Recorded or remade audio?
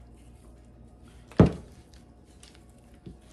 recorded